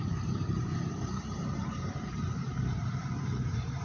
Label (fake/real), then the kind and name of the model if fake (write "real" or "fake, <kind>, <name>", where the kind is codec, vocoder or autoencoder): fake, vocoder, BigVGAN v2